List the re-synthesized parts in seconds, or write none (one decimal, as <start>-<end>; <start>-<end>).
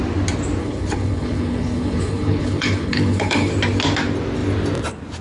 0.6-3.5